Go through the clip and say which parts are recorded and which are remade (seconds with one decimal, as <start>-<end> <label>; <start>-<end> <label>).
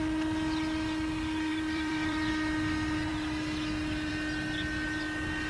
0.0-1.5 recorded; 1.5-2.3 remade; 2.3-5.5 recorded